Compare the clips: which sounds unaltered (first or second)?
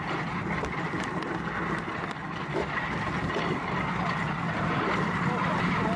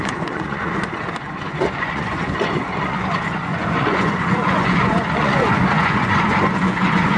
first